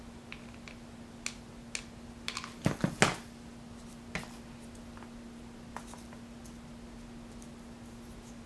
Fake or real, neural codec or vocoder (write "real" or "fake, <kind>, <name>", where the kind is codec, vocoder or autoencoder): real